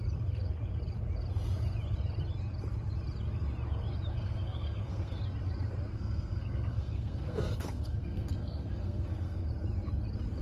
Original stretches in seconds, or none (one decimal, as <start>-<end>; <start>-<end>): 0.0-4.1; 5.2-5.9; 9.5-10.4